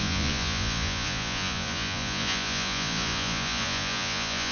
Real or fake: fake